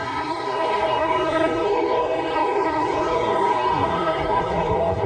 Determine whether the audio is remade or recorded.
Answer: remade